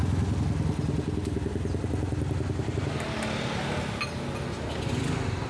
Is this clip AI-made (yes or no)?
no